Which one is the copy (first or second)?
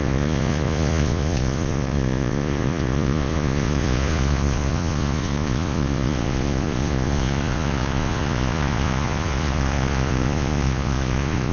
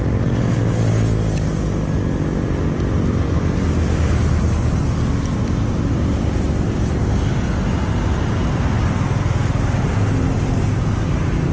first